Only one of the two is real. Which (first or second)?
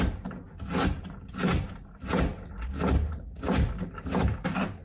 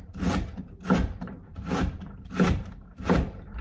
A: first